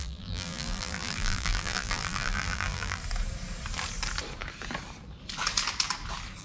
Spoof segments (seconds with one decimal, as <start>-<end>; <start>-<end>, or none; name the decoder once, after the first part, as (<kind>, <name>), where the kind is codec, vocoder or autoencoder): 0.0-3.0 (vocoder, BigVGAN v2)

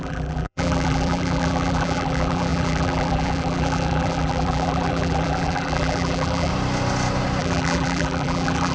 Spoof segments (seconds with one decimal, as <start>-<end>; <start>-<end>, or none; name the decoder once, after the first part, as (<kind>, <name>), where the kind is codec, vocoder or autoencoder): 0.0-6.5 (vocoder, BigVGAN v2); 7.4-8.7

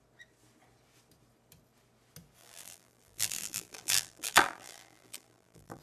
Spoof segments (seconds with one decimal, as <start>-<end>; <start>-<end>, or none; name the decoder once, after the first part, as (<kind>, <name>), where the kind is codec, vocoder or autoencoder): 2.4-5.8 (vocoder, BigVGAN v2)

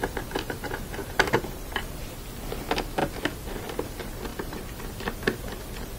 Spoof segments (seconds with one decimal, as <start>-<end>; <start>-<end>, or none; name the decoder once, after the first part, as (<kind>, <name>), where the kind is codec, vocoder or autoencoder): 1.0-2.1 (vocoder, BigVGAN v2); 4.3-4.8

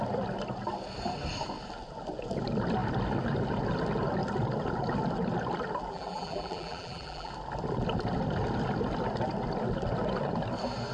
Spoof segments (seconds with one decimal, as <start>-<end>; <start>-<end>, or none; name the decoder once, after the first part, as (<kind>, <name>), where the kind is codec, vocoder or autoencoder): 5.9-7.3 (vocoder, BigVGAN v2)

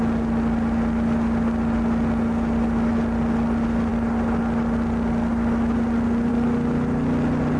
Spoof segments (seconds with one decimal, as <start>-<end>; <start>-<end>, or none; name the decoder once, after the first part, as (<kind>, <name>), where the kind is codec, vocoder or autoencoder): none

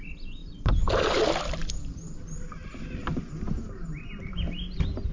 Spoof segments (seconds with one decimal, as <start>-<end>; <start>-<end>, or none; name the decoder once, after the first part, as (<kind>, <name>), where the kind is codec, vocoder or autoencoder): none

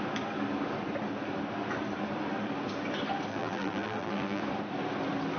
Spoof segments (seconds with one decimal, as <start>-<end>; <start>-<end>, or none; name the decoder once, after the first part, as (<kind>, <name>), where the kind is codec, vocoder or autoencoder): 3.3-4.4 (vocoder, BigVGAN v2)